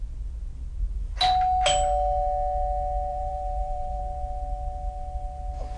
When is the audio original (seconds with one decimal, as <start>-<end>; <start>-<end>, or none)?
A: 0.0-3.1; 4.0-5.8